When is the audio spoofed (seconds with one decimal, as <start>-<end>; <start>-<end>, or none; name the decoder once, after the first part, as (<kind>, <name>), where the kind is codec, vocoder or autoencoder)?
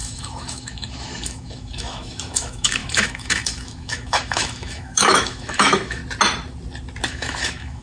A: 0.0-6.0 (autoencoder, DAC-VAE); 7.1-7.8